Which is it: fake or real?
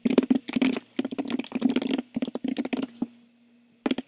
real